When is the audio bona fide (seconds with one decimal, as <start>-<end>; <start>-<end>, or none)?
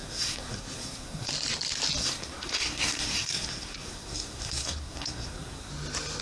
1.3-2.0; 5.7-6.2